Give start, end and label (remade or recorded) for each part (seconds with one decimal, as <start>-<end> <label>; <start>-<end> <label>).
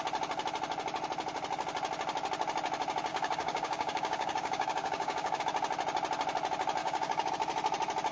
0.0-3.1 recorded; 3.1-5.4 remade; 5.4-6.8 recorded; 6.8-7.3 remade; 7.3-8.1 recorded